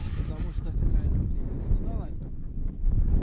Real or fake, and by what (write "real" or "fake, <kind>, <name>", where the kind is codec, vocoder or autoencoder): real